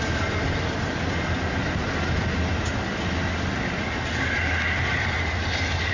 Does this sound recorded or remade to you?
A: recorded